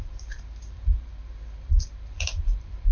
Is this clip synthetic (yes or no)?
yes